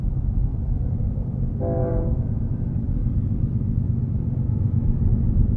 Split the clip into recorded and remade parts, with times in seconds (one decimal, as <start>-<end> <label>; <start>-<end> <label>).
0.0-1.8 recorded; 1.8-2.4 remade; 2.4-5.1 recorded; 5.1-5.6 remade